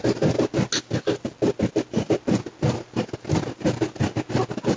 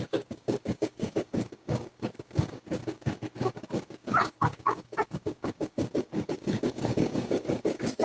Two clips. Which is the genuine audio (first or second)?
first